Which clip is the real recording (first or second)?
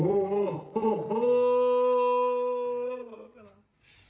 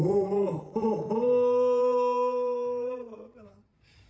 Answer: first